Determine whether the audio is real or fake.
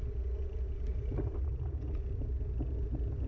real